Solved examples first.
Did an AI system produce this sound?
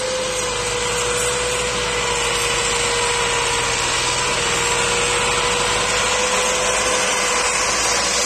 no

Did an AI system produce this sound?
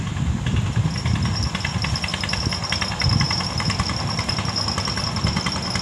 no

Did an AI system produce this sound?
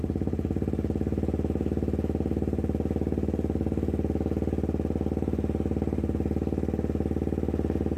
no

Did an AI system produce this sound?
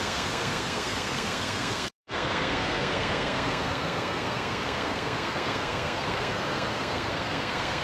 yes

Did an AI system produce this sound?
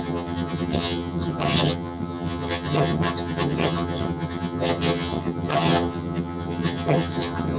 yes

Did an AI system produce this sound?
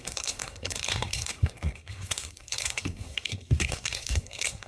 yes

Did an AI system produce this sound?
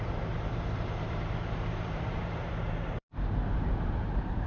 yes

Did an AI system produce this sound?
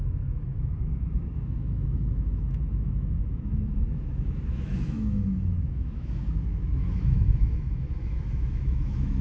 yes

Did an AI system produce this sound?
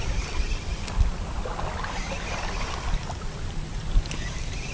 no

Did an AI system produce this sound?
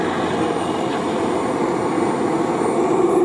no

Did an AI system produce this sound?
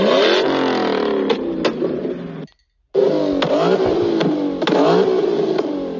no